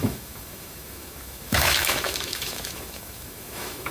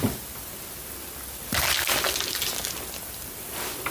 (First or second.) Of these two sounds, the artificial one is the first